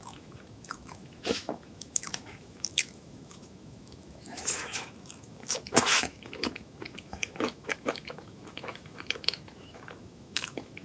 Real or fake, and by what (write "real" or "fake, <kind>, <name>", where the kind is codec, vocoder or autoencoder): fake, autoencoder, DAC-VAE